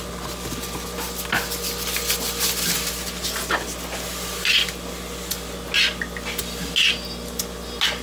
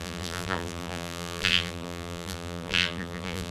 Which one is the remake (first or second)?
second